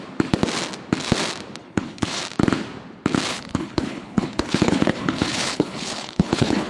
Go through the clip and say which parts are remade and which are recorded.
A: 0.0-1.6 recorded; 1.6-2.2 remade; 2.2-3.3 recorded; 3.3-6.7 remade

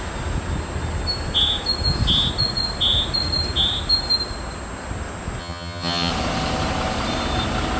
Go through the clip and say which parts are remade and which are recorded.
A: 0.0-5.4 recorded; 5.4-6.1 remade; 6.1-7.8 recorded

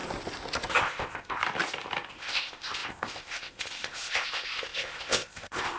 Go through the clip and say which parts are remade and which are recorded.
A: 0.0-0.8 recorded; 0.8-1.4 remade; 1.4-2.1 recorded; 2.1-5.8 remade

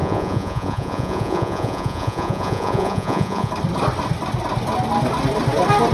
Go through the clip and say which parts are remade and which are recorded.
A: 0.0-3.5 remade; 3.5-5.9 recorded